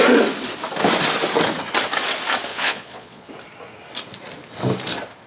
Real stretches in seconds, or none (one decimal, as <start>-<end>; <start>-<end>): 0.0-2.5; 3.3-5.3